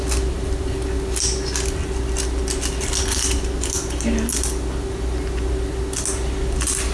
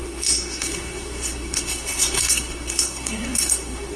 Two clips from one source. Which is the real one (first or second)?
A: first